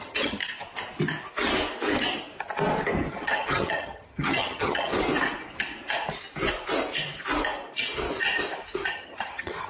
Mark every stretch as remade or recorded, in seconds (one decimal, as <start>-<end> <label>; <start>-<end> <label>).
0.0-0.4 remade; 0.4-3.1 recorded; 3.1-4.9 remade; 4.9-8.9 recorded; 8.9-9.7 remade